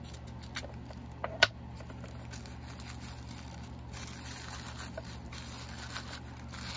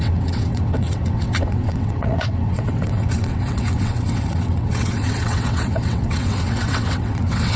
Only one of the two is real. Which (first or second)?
first